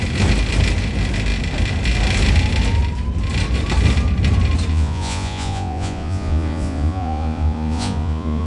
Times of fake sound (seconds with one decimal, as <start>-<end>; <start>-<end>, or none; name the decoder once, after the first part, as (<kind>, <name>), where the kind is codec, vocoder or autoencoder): 4.7-8.5 (vocoder, Vocos)